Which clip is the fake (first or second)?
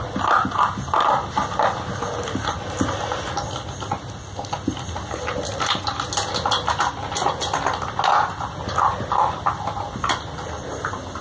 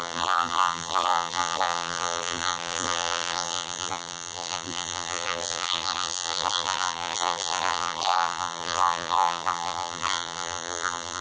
second